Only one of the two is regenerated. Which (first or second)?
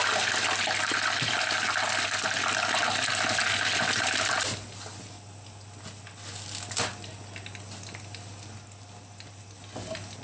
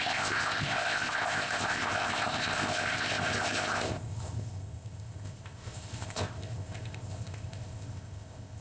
second